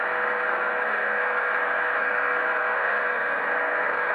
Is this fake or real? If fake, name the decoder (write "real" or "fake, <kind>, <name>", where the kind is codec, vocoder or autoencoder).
fake, codec, SNAC